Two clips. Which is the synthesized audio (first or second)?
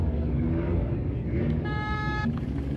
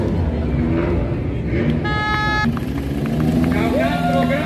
first